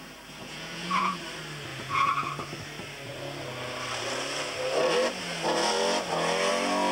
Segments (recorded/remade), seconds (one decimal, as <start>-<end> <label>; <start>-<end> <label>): 0.0-0.4 recorded; 0.4-1.2 remade; 1.2-1.7 recorded; 1.7-2.3 remade; 2.3-6.9 recorded